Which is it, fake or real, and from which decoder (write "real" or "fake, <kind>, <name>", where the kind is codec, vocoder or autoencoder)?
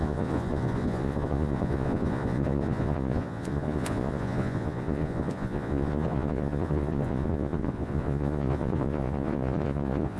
fake, vocoder, Vocos